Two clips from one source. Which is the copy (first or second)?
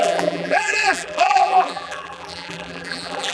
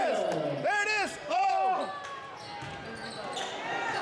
first